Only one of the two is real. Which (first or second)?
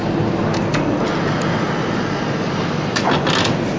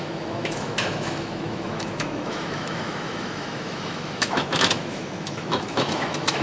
first